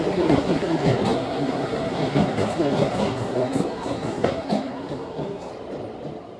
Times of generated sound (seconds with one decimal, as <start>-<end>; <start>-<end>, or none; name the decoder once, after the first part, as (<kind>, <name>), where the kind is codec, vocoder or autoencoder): 0.0-5.5 (codec, SNAC)